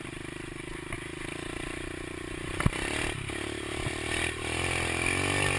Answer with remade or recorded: recorded